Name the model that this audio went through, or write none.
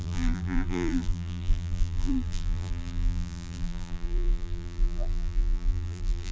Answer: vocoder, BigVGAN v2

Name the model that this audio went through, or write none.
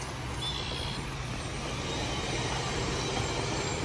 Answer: none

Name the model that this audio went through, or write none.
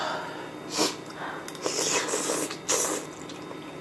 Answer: none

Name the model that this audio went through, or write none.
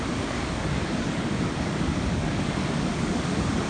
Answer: codec, DAC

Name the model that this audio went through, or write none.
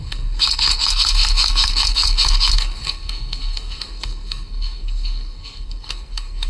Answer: codec, SNAC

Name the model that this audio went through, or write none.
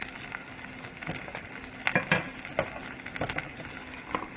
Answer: none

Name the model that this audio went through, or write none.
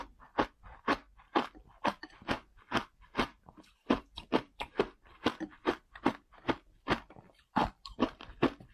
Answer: vocoder, BigVGAN v2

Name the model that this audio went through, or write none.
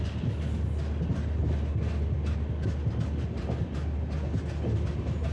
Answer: none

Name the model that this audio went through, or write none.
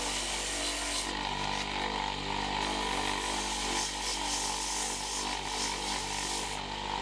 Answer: none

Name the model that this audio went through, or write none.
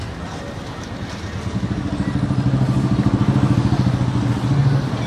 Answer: none